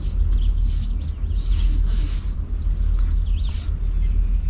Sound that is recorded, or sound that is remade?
recorded